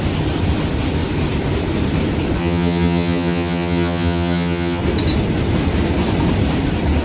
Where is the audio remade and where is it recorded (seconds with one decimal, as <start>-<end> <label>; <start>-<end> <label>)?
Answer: 0.0-2.4 recorded; 2.4-4.8 remade; 4.8-7.0 recorded